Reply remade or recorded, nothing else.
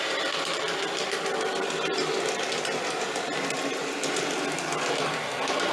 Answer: recorded